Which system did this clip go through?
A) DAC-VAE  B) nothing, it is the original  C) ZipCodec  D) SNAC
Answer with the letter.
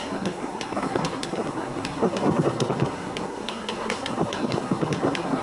D